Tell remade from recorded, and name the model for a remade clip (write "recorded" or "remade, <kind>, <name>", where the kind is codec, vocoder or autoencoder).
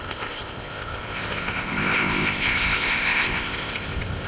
remade, codec, ZipCodec